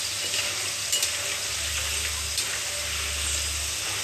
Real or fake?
real